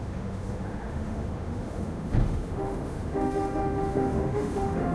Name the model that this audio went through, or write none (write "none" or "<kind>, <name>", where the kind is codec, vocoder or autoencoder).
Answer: autoencoder, DAC-VAE